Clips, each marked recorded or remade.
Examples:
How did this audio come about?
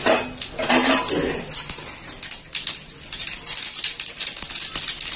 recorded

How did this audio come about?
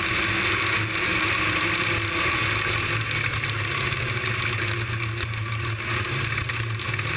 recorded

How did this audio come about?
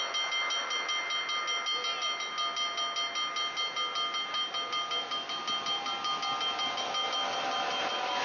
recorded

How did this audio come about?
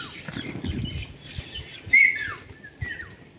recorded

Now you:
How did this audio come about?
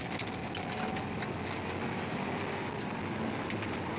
recorded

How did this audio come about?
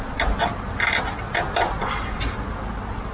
recorded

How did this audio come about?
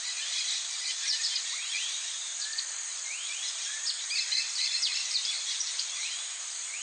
remade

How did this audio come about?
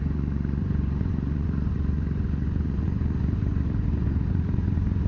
remade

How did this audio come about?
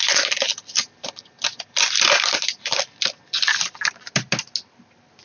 recorded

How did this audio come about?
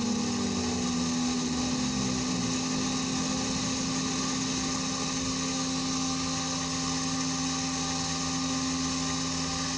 recorded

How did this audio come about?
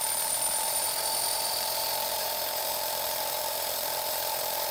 remade